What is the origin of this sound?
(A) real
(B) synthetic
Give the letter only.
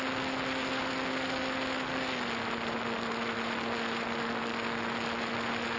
A